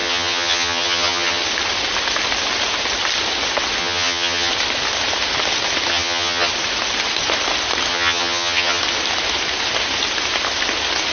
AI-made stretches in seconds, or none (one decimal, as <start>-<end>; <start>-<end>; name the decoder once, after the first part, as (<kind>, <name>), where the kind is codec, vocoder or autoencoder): 0.0-1.4 (vocoder, HiFi-GAN); 3.8-4.5; 5.9-6.5; 7.9-8.8